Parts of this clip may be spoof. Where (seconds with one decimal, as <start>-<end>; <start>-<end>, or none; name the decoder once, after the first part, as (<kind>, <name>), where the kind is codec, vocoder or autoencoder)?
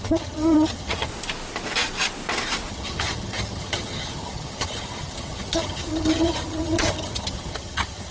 0.0-1.1 (vocoder, HiFi-GAN); 2.7-8.1